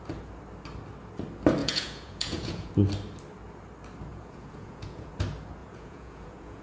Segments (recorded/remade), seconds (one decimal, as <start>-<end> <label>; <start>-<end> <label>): 0.0-1.6 recorded; 1.6-2.7 remade; 2.7-4.1 recorded; 4.1-5.1 remade; 5.1-5.6 recorded; 5.6-6.6 remade